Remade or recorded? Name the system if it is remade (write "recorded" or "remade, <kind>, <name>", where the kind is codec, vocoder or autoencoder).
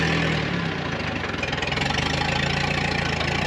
recorded